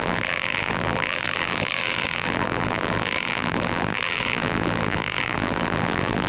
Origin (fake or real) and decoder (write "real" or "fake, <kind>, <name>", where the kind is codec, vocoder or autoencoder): fake, vocoder, BigVGAN v2